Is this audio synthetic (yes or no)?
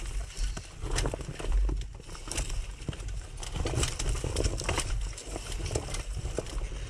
no